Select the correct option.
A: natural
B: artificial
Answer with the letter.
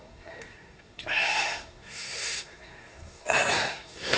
B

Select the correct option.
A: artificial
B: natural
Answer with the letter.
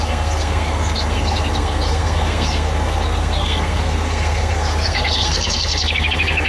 A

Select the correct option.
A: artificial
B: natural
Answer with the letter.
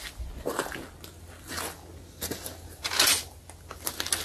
B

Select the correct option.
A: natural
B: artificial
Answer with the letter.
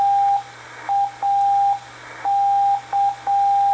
A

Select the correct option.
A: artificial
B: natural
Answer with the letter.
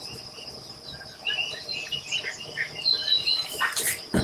B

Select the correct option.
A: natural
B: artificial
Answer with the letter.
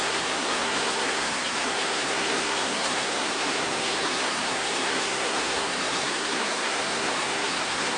B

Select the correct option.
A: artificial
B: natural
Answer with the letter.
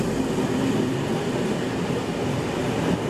B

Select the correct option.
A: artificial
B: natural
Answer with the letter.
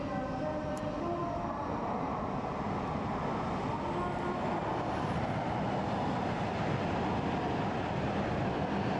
B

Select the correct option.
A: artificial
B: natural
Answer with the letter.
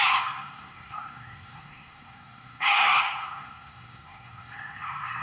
A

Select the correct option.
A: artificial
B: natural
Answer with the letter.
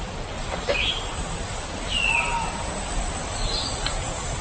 B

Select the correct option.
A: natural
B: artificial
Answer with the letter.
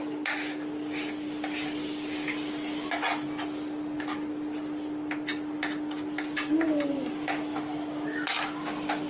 A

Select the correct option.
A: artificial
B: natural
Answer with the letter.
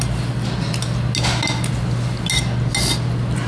B